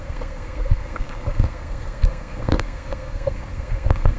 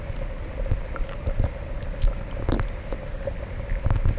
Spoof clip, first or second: first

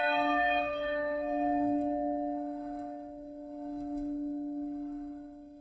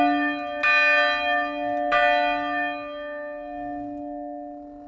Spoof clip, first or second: first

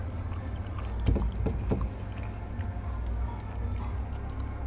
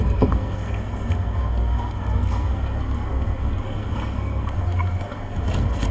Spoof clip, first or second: second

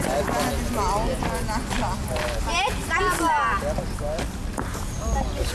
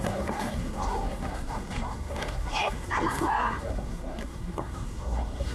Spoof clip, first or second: second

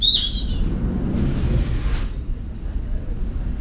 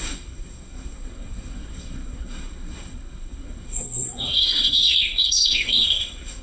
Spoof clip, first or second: second